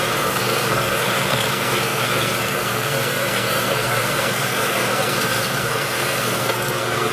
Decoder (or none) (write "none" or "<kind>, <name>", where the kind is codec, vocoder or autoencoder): codec, SNAC